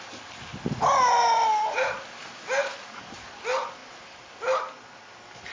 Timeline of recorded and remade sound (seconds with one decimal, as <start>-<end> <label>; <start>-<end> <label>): 0.0-5.5 recorded

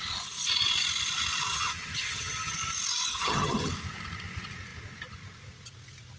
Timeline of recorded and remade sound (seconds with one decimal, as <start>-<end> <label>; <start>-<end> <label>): 0.0-1.5 recorded; 1.5-2.5 remade; 2.5-3.1 recorded; 3.1-3.7 remade; 3.7-6.2 recorded